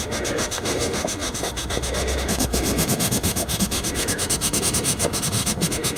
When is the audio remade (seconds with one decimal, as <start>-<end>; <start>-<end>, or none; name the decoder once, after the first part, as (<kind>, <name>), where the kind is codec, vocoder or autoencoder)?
0.0-6.0 (autoencoder, DAC-VAE)

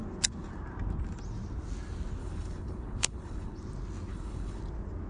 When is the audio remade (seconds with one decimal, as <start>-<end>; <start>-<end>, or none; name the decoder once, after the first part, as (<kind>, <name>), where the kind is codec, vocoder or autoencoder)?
2.2-3.6 (codec, HILCodec); 4.1-4.6

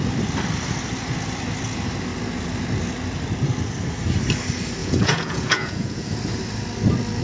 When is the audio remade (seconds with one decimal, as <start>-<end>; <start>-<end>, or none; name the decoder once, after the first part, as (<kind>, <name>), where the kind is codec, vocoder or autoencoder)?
4.8-6.1 (vocoder, Vocos)

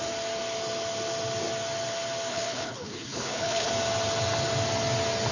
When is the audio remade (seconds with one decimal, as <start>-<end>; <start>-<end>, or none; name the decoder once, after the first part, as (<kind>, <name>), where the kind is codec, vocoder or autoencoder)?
2.3-3.7 (codec, HILCodec)